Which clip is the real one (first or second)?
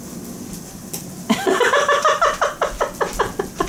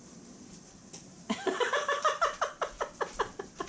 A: first